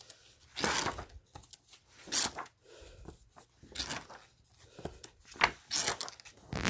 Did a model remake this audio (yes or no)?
no